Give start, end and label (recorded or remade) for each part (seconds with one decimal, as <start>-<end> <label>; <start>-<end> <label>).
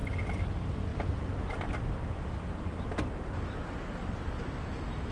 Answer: 0.0-5.1 recorded